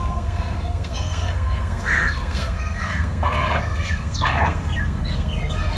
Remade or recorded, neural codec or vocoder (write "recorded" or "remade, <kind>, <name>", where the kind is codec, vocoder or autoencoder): remade, codec, SNAC